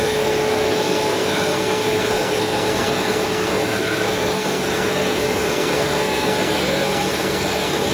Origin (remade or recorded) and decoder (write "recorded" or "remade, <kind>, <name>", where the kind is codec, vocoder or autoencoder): remade, codec, SNAC